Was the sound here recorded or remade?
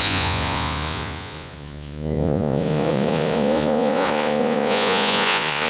remade